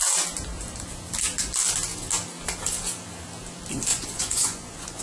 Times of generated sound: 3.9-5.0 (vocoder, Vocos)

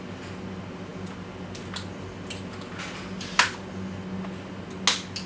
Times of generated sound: none

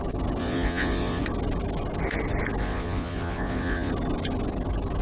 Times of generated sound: 0.4-1.2 (vocoder, Vocos); 2.6-3.9

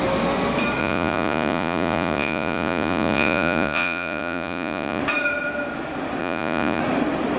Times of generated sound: 0.8-5.0 (vocoder, Vocos); 6.2-6.8

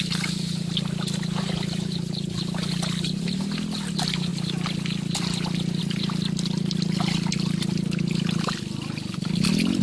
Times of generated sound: none

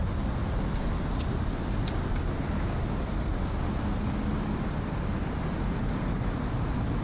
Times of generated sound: none

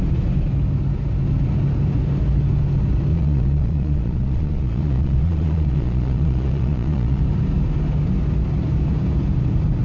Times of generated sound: 3.1-7.2 (vocoder, Vocos)

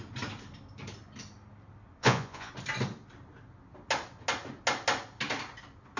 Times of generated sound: 2.0-2.5 (vocoder, Vocos)